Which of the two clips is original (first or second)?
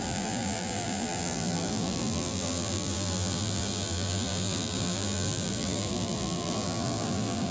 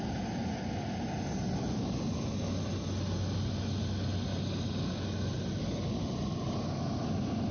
second